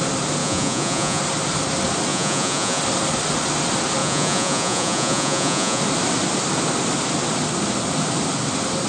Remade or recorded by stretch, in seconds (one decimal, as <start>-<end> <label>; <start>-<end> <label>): 0.0-0.4 recorded; 0.4-1.2 remade; 1.2-2.1 recorded; 2.1-2.8 remade; 2.8-4.0 recorded; 4.0-5.8 remade; 5.8-8.9 recorded